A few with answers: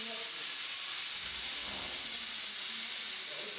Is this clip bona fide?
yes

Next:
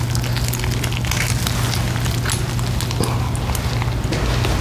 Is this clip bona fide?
yes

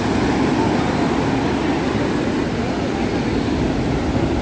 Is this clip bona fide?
yes